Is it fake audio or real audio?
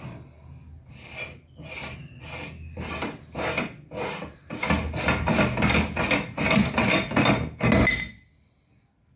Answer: real